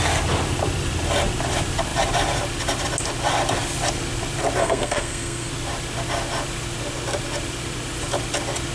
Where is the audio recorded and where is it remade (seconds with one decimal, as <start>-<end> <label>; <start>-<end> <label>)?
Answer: 0.0-4.6 recorded; 4.6-5.5 remade; 5.5-8.7 recorded